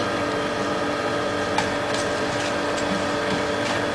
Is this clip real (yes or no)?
yes